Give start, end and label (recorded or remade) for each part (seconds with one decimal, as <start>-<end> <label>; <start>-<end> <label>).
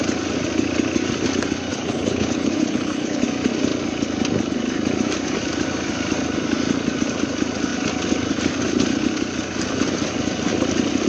0.0-1.7 recorded; 1.7-3.2 remade; 3.2-11.1 recorded